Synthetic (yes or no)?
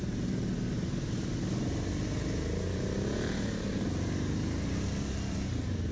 no